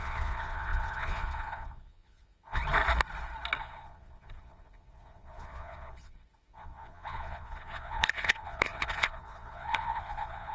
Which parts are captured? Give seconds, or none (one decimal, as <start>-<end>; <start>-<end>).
2.6-3.6